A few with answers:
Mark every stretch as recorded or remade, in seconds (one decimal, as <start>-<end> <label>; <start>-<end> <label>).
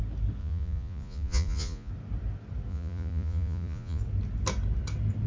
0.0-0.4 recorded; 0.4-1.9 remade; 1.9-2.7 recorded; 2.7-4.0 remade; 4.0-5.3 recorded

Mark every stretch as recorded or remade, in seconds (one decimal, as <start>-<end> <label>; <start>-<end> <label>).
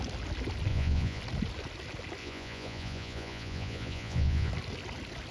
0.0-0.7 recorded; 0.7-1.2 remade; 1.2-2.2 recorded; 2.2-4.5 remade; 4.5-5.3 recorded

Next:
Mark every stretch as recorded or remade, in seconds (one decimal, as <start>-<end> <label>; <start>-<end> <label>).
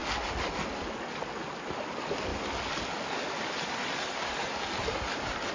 0.0-5.5 recorded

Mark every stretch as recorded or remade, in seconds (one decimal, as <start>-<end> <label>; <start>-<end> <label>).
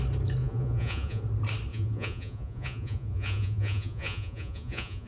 0.0-0.4 recorded; 0.4-1.2 remade; 1.2-1.7 recorded; 1.7-5.1 remade